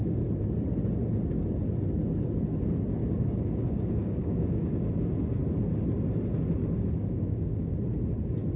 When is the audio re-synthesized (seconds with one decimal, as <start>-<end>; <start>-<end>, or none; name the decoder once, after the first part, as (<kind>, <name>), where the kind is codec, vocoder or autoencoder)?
3.0-4.8 (codec, DAC); 6.6-7.7